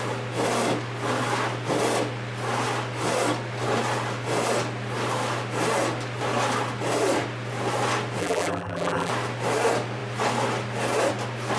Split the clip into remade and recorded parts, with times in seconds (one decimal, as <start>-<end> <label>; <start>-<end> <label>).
0.0-8.2 recorded; 8.2-9.1 remade; 9.1-11.6 recorded